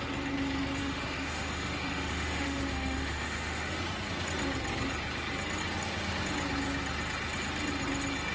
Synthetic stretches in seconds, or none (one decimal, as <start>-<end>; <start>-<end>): 0.8-3.8